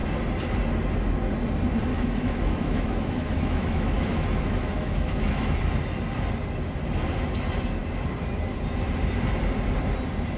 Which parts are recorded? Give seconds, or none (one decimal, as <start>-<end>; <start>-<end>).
0.0-1.9; 5.6-10.4